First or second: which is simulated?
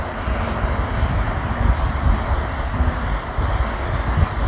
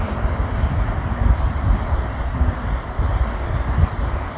second